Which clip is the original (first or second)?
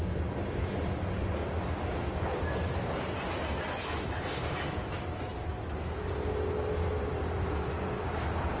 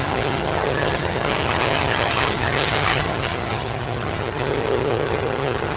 first